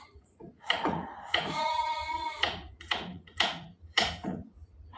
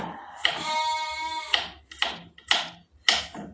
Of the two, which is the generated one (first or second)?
first